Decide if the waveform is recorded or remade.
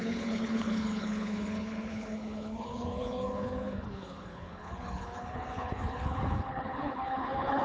remade